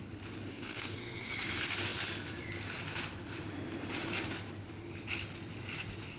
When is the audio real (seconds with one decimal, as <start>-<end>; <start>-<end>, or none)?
0.0-0.5; 1.3-6.2